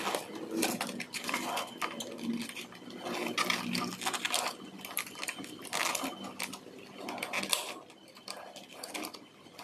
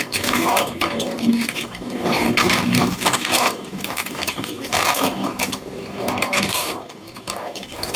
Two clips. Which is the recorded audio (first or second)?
first